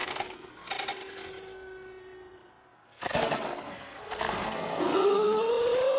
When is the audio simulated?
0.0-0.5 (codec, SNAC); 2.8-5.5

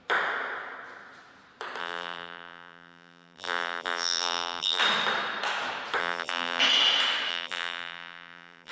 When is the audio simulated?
1.8-4.8 (vocoder, BigVGAN v2); 6.0-6.6; 7.3-8.7

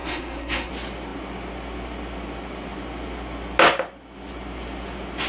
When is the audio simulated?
0.0-0.7 (codec, SNAC)